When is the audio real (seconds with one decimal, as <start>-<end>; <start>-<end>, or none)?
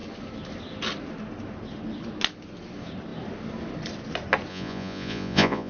0.0-4.5